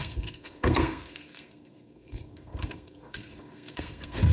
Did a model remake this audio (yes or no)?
yes